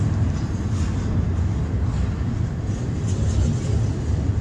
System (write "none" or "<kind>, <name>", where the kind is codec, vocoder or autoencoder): none